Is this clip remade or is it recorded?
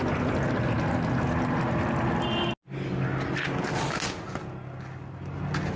recorded